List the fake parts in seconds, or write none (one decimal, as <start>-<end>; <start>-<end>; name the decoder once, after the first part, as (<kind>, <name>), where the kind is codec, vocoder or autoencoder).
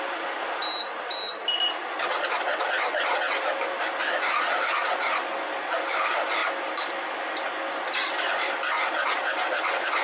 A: none